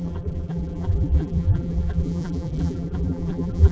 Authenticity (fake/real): fake